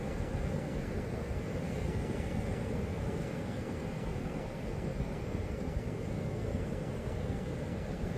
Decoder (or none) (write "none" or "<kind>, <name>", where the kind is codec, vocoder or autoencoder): codec, SNAC